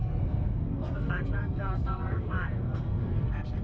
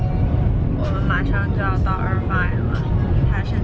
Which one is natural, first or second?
second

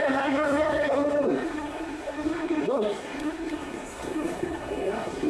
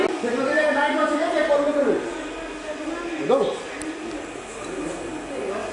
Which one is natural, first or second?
second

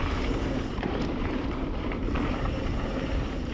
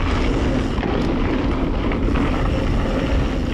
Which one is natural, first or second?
second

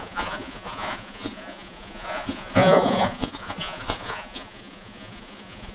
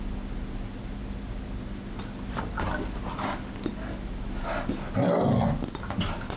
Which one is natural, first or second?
second